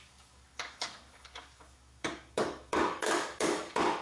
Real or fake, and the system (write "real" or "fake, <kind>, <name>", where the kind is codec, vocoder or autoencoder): fake, codec, DAC